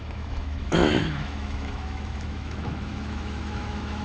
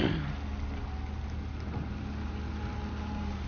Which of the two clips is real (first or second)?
second